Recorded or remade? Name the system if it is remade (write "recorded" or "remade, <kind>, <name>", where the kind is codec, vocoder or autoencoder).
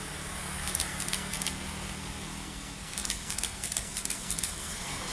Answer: remade, codec, SNAC